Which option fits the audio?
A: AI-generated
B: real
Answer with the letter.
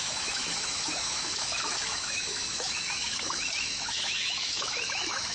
A